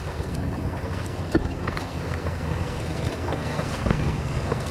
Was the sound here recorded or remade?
remade